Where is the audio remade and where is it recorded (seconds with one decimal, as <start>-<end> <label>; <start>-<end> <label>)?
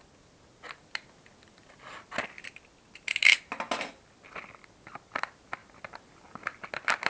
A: 0.0-7.1 recorded